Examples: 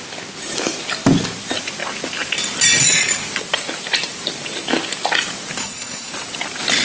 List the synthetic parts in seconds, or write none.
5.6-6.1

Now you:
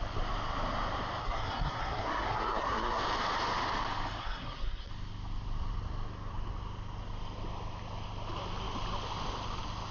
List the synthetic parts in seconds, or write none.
1.2-3.0; 4.2-4.9

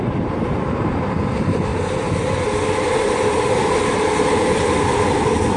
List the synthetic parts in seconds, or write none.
0.0-1.7; 4.3-5.6